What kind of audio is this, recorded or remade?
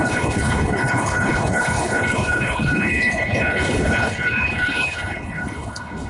remade